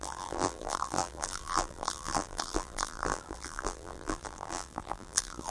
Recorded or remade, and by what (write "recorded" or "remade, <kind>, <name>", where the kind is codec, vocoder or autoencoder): remade, vocoder, BigVGAN v2